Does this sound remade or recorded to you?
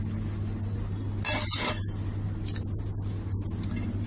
recorded